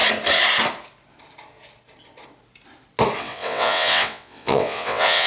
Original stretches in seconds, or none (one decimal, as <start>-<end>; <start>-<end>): 0.0-3.2